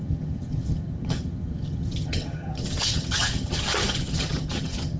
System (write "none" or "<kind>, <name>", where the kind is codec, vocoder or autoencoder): vocoder, HiFi-GAN